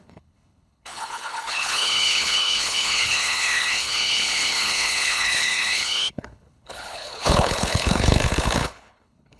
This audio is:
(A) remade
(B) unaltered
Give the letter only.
A